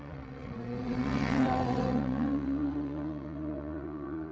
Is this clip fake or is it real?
fake